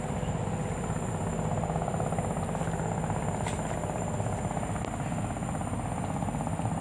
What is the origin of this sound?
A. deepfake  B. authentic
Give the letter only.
B